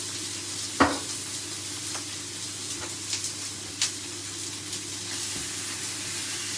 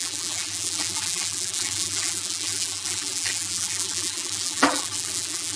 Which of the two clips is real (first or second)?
first